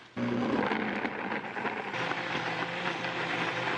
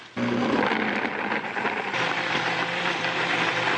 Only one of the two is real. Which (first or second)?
first